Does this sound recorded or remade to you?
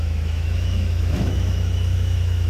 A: remade